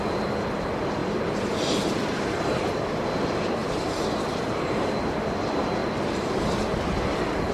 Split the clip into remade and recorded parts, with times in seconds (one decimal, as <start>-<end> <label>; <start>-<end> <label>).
0.0-1.0 recorded; 1.0-2.0 remade; 2.0-5.8 recorded; 5.8-6.6 remade; 6.6-7.5 recorded